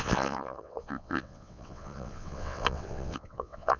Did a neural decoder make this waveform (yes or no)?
yes